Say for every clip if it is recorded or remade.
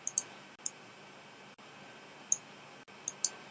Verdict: recorded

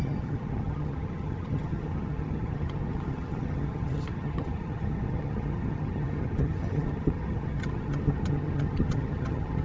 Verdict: remade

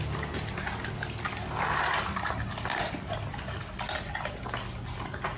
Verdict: recorded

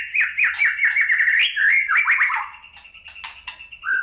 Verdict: recorded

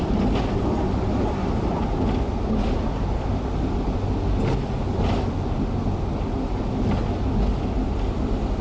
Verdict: recorded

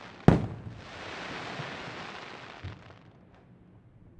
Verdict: recorded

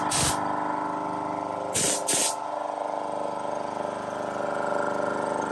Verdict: recorded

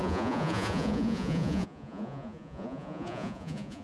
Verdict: remade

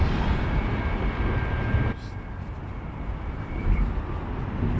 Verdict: recorded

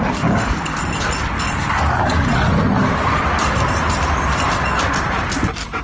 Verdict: recorded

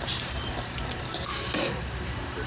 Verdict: remade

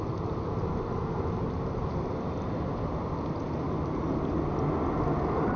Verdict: recorded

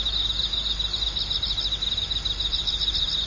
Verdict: recorded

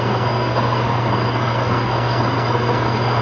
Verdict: remade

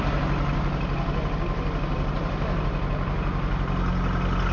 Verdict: recorded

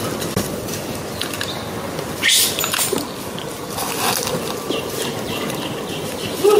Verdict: recorded